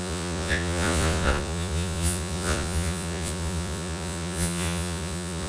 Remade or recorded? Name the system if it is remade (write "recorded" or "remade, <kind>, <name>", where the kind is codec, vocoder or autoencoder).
remade, vocoder, Vocos